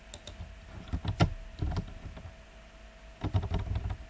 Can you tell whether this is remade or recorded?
recorded